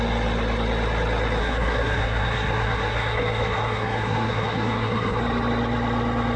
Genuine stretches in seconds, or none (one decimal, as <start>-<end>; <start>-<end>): 0.0-1.4; 5.2-6.4